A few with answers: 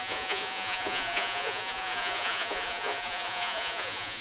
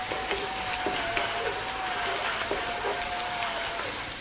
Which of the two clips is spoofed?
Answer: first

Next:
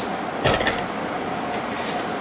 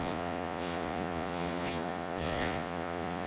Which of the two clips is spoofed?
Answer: second